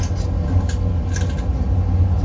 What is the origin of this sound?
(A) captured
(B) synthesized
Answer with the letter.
A